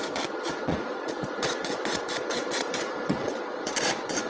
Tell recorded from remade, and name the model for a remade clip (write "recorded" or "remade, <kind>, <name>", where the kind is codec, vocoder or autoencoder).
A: remade, vocoder, Vocos